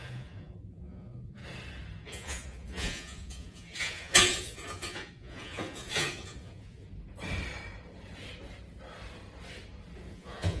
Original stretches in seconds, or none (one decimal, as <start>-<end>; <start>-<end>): 1.4-2.0; 6.9-10.1